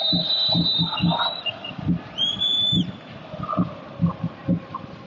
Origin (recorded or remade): recorded